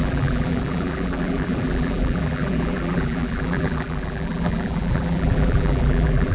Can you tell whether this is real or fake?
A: fake